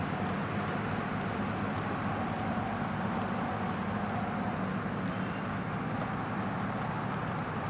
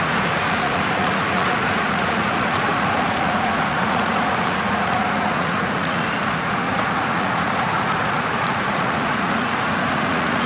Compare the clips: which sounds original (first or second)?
first